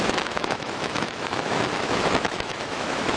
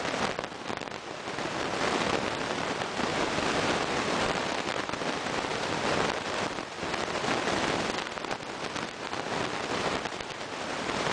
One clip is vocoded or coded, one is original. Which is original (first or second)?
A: second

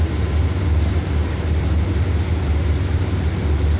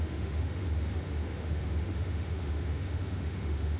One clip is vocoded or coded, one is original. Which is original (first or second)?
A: first